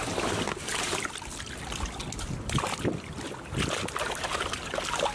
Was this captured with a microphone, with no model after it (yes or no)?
yes